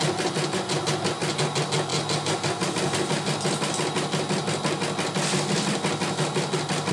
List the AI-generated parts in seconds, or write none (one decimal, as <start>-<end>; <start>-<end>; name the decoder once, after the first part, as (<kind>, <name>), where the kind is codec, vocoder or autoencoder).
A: none